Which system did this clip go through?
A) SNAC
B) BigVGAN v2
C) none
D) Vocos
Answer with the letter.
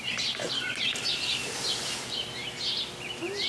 C